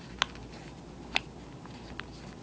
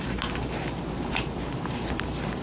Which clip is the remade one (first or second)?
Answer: second